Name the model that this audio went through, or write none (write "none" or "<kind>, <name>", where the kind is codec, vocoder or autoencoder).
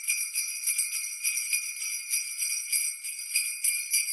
none